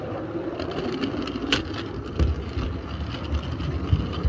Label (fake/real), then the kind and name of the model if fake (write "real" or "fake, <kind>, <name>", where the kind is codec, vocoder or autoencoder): real